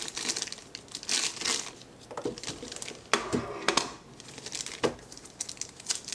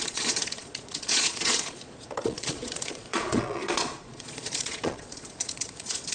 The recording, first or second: first